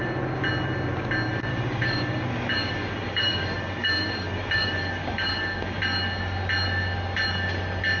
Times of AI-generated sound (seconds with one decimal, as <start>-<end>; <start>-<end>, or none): 1.5-5.8